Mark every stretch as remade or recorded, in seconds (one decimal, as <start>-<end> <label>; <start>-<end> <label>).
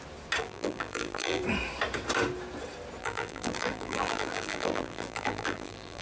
0.0-0.4 recorded; 0.4-1.4 remade; 1.4-3.0 recorded; 3.0-6.0 remade